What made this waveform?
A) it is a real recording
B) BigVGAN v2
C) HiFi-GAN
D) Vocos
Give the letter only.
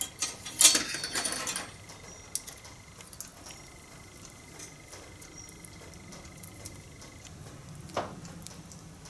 A